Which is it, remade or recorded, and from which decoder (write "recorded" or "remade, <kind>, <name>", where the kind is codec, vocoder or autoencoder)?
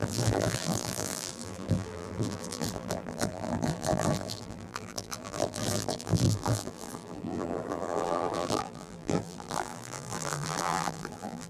remade, vocoder, BigVGAN v2